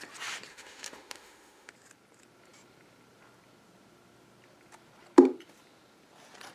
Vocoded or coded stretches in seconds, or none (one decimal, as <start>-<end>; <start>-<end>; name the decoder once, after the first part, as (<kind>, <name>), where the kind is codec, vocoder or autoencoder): 0.5-1.7 (autoencoder, DAC-VAE)